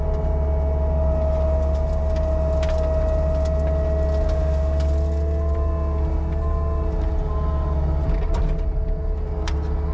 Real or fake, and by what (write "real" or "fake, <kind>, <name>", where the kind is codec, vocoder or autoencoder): real